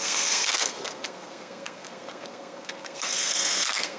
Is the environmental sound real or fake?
fake